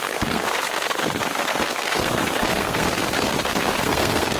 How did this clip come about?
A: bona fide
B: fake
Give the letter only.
B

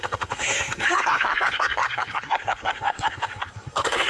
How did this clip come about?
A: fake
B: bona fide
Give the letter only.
A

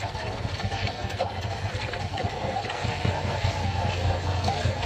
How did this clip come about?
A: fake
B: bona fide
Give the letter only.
A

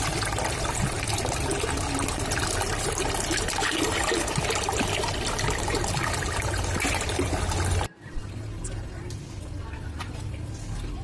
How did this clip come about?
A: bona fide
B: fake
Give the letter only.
A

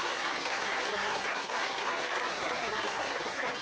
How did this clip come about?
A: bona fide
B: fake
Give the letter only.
B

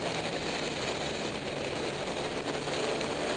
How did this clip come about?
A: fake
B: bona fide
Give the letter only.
B